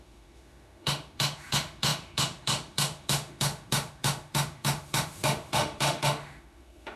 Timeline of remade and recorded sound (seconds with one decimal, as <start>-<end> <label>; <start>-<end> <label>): 0.0-7.0 remade